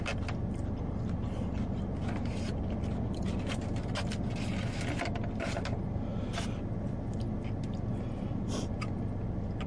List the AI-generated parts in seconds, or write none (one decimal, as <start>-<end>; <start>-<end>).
none